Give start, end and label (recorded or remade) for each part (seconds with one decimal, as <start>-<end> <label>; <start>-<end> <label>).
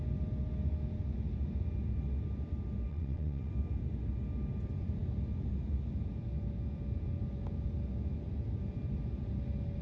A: 0.0-2.9 recorded; 2.9-3.5 remade; 3.5-9.8 recorded